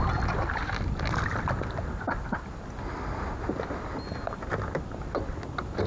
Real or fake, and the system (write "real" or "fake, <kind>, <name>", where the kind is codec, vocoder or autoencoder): real